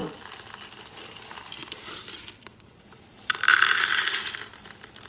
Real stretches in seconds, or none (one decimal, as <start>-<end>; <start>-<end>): 0.0-1.6; 4.4-5.1